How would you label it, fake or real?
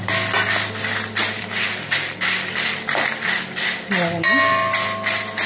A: real